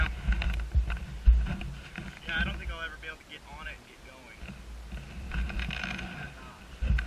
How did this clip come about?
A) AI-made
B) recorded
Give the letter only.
B